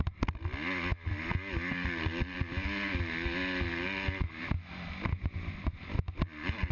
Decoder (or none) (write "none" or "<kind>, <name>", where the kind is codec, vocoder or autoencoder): none